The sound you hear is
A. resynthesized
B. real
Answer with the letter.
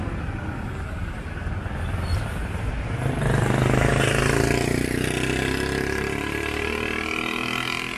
B